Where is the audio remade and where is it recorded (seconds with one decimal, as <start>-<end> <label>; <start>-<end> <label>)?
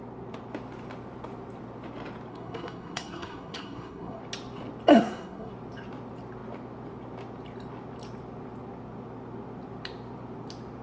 0.0-2.3 recorded; 2.3-4.2 remade; 4.2-4.9 recorded; 4.9-5.5 remade; 5.5-10.8 recorded